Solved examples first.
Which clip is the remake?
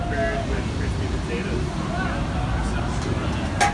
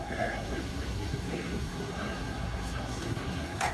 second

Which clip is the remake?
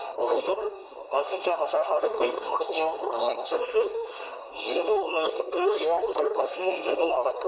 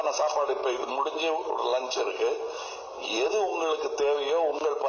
first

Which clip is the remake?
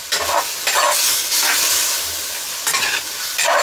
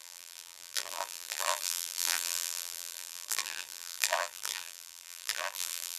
second